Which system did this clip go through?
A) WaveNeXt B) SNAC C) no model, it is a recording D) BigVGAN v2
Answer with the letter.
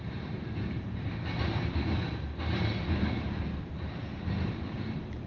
D